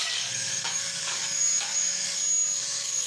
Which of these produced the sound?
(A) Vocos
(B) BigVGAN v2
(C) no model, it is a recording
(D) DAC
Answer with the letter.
D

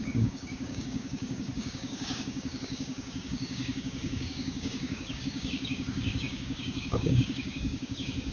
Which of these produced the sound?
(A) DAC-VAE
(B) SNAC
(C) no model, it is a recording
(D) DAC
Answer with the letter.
D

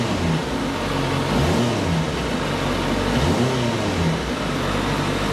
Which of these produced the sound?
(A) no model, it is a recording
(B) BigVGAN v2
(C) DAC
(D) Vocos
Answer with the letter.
A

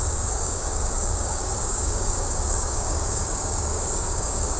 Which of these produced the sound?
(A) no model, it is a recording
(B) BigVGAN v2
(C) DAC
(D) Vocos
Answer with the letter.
C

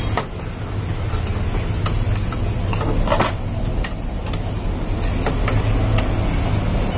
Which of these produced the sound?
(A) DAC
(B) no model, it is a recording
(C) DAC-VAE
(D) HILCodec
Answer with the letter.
B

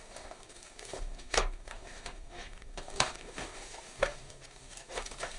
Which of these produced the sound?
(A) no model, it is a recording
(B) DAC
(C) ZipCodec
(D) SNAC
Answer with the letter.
B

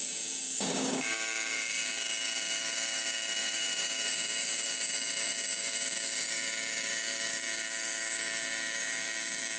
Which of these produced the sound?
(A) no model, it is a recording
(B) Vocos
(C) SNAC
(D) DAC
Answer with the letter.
D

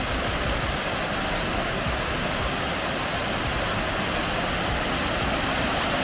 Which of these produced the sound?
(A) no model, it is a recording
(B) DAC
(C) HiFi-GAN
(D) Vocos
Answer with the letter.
A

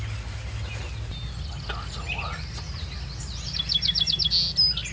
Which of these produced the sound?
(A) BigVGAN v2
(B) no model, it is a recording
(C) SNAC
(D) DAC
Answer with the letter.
B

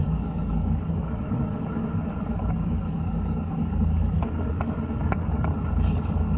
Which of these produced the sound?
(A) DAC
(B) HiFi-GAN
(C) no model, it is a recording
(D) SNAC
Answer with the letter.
A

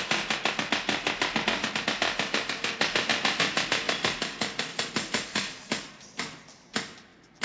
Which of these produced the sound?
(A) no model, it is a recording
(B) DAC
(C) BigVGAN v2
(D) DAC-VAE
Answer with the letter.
A